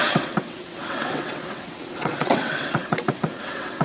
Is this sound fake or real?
fake